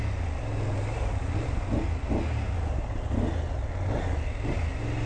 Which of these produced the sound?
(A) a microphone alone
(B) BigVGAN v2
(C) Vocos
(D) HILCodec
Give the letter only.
A